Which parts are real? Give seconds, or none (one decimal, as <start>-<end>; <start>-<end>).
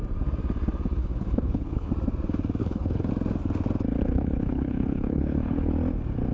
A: 0.0-1.0; 1.9-2.6; 3.1-4.0; 5.7-6.3